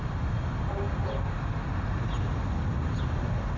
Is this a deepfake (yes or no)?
no